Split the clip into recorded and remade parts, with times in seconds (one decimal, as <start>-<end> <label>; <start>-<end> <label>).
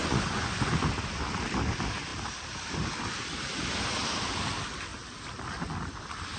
0.0-0.7 remade; 0.7-6.4 recorded